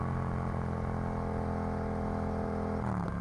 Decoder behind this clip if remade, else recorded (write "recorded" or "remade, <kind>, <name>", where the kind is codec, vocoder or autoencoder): recorded